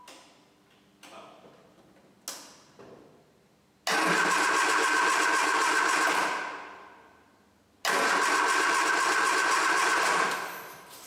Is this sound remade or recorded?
recorded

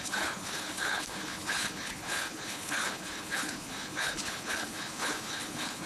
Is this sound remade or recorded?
remade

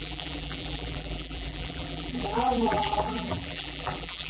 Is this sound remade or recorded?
remade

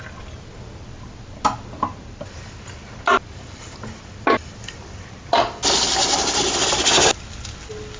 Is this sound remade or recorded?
recorded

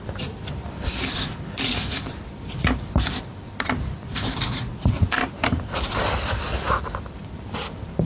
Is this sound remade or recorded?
remade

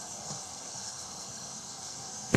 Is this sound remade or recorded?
remade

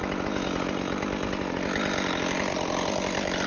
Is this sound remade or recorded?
recorded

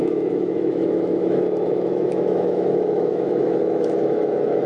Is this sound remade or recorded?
remade